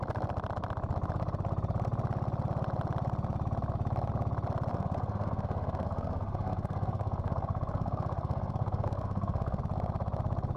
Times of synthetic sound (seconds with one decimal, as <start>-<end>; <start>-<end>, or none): 4.7-9.6